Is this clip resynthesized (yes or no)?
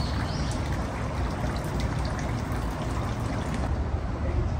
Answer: no